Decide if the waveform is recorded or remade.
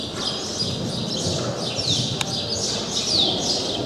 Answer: recorded